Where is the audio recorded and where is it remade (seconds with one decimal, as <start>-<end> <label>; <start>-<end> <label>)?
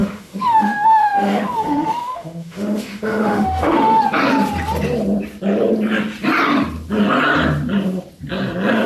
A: 0.0-4.0 remade; 4.0-8.9 recorded